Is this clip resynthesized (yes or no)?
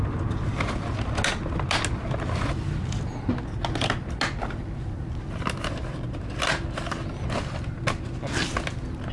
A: no